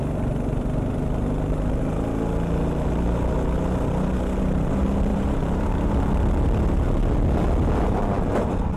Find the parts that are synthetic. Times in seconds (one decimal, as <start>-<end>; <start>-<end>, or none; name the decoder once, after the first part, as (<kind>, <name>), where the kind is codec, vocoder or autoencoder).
5.1-5.9 (vocoder, BigVGAN v2)